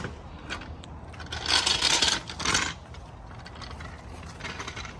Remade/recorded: recorded